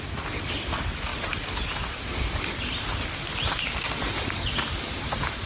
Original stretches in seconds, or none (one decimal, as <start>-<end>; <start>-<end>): 0.0-5.5